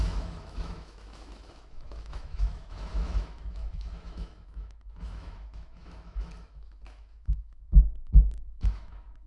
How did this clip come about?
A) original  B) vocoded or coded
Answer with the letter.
B